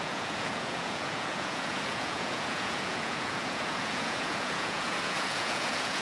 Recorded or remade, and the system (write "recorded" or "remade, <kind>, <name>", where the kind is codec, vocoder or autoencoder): remade, vocoder, Vocos